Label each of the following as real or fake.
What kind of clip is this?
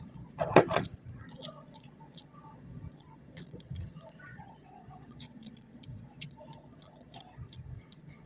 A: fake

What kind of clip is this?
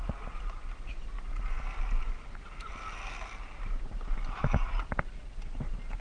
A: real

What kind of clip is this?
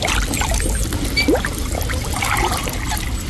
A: real